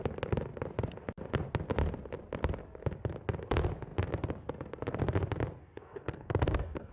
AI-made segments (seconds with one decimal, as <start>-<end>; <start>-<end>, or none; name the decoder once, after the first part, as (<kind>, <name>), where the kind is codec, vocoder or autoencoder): 5.6-6.9 (codec, DAC)